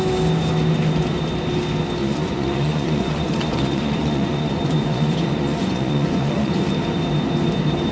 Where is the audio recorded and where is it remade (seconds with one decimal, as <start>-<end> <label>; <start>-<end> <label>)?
0.0-2.0 recorded; 2.0-6.7 remade; 6.7-7.9 recorded